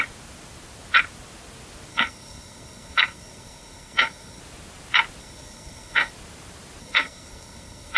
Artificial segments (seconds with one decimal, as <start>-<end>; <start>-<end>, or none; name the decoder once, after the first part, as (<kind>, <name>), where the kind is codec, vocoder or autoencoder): 1.9-4.4 (codec, SNAC); 5.2-6.1; 6.8-8.0